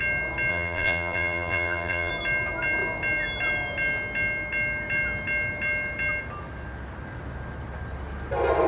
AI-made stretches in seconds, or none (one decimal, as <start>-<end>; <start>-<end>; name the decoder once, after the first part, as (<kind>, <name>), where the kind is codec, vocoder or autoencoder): 0.5-2.1 (vocoder, BigVGAN v2)